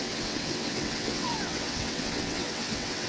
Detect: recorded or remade remade